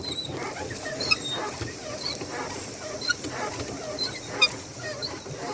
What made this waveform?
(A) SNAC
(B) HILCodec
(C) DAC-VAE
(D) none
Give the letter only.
D